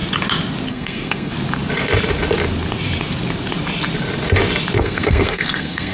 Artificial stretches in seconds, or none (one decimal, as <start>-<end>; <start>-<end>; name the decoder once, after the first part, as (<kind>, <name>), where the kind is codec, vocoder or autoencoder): 0.7-1.3 (codec, SNAC); 4.8-5.9